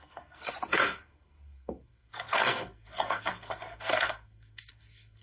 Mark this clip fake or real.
fake